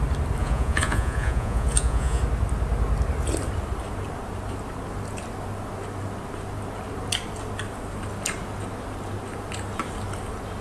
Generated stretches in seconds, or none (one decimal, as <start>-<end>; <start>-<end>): 0.4-2.2